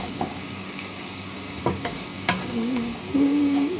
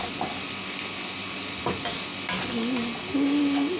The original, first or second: second